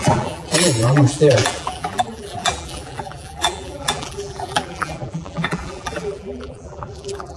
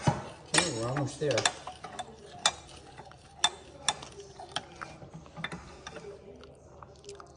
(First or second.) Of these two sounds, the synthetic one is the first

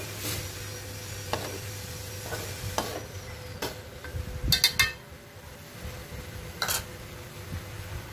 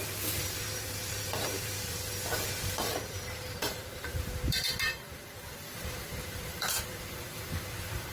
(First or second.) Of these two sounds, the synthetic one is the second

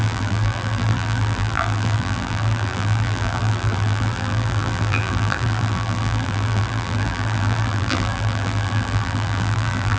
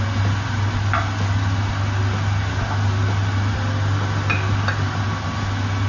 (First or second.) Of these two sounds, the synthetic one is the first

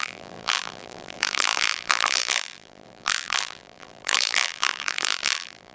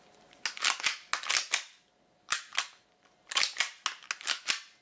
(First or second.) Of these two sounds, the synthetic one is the first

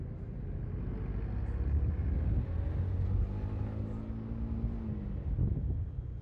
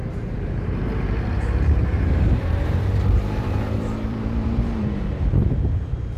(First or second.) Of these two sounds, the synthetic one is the second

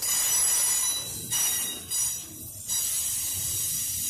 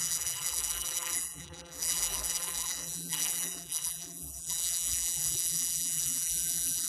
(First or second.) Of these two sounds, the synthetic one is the second